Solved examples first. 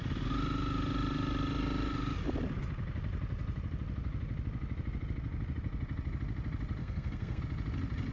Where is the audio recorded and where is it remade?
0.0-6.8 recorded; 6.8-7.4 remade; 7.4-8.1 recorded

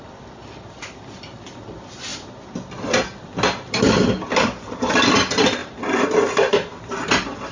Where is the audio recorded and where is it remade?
0.0-5.6 recorded; 5.6-6.1 remade; 6.1-7.5 recorded

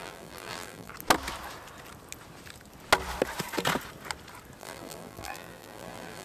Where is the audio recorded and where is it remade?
0.0-0.9 remade; 0.9-4.6 recorded; 4.6-6.2 remade

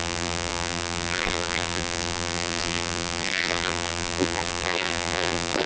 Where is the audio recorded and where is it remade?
0.0-5.7 remade

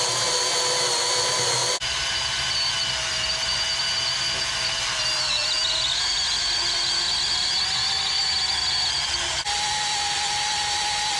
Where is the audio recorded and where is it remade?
0.0-11.2 recorded

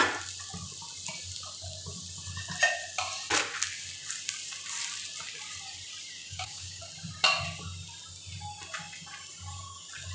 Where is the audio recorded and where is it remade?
0.0-6.2 recorded; 6.2-6.8 remade; 6.8-10.1 recorded